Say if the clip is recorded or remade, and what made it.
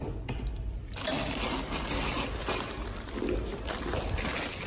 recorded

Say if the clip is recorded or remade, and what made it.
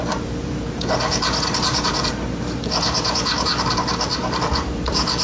remade, vocoder, BigVGAN v2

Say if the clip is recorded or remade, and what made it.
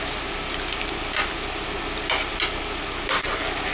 recorded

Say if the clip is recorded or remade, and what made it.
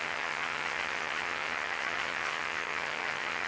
remade, vocoder, HiFi-GAN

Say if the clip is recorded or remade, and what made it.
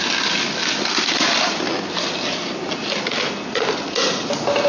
recorded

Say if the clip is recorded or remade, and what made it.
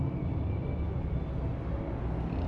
recorded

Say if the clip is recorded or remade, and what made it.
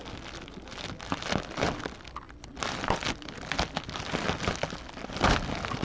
recorded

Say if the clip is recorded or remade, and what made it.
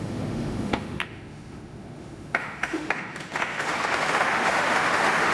remade, autoencoder, DAC-VAE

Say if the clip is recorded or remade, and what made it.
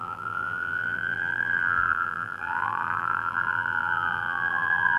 remade, vocoder, BigVGAN v2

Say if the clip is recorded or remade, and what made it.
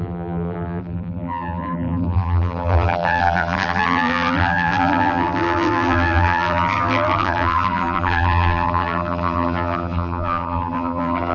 remade, vocoder, BigVGAN v2